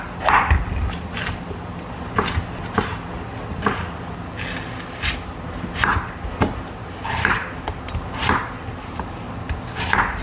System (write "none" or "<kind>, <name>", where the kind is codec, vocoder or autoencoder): none